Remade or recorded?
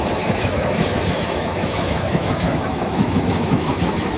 remade